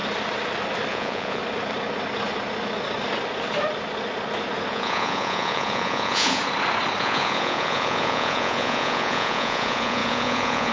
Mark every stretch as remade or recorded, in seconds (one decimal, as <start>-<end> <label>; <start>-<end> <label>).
0.0-0.9 recorded; 0.9-1.4 remade; 1.4-4.7 recorded; 4.7-6.4 remade; 6.4-7.0 recorded; 7.0-10.7 remade